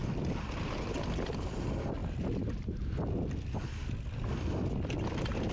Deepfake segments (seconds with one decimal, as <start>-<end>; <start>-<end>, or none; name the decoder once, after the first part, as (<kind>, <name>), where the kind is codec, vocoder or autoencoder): none